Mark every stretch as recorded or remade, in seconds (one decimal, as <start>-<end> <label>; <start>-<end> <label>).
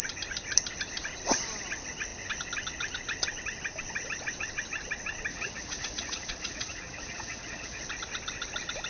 0.0-5.3 recorded; 5.3-7.8 remade; 7.8-8.9 recorded